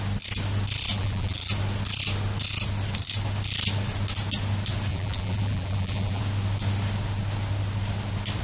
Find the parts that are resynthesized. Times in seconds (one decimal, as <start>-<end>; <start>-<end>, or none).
0.9-1.5; 4.9-6.2